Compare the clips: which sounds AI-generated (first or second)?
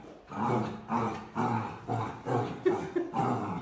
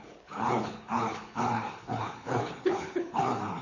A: second